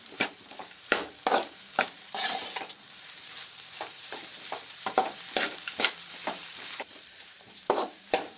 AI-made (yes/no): yes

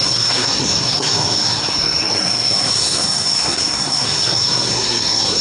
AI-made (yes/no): yes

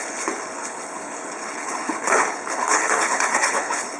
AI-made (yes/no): yes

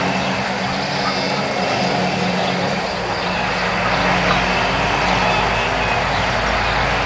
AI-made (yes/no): no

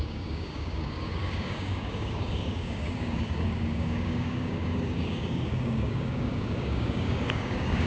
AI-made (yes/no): yes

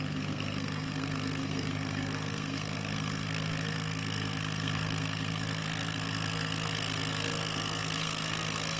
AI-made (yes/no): yes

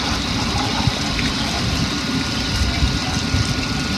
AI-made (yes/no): no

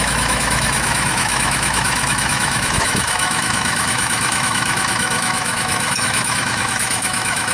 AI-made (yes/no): yes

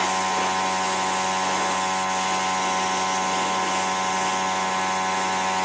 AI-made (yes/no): no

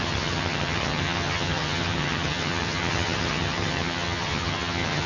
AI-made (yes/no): yes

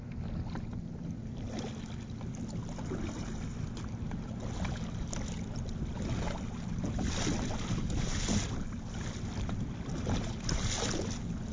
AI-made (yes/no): no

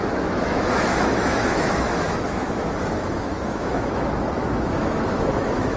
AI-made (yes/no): yes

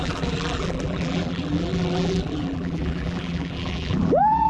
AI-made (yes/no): yes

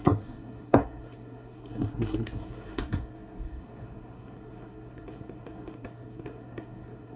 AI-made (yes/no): yes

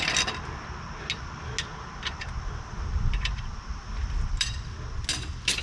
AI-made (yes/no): no